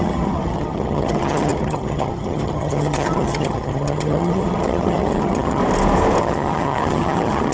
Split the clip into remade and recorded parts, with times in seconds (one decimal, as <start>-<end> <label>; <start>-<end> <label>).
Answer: 0.0-5.6 remade; 5.6-6.2 recorded; 6.2-7.5 remade